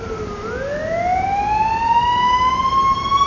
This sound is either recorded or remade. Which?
recorded